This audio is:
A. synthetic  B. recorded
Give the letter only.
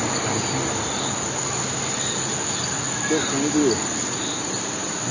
B